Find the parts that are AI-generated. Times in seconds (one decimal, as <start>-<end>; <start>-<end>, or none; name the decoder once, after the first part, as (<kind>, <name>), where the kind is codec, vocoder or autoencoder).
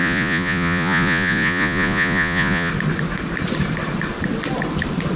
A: 0.0-2.7 (vocoder, Vocos)